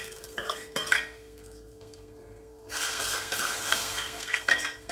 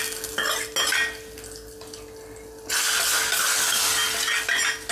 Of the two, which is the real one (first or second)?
second